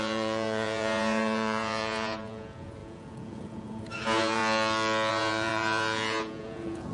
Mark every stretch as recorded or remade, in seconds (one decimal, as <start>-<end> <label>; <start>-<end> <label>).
0.0-4.4 remade; 4.4-5.1 recorded; 5.1-6.9 remade